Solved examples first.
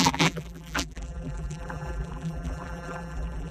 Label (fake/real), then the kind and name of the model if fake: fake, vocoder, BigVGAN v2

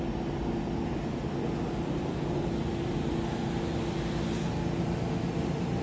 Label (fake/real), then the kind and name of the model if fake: real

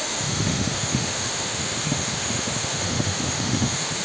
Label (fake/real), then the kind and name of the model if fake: fake, autoencoder, DAC-VAE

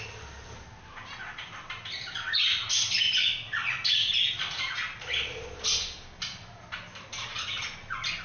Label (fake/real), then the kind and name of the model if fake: real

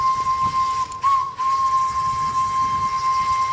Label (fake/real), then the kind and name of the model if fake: real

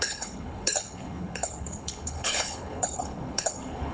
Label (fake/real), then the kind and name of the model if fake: fake, codec, HILCodec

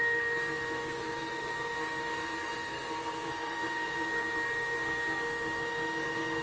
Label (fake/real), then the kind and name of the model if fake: fake, codec, SNAC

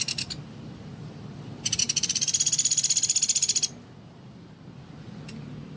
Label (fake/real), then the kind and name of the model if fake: real